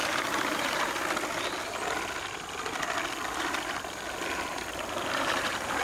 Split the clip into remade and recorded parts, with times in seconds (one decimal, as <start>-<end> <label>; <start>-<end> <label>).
0.0-1.0 remade; 1.0-4.5 recorded; 4.5-5.8 remade